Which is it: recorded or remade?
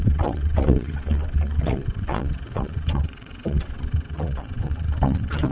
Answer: remade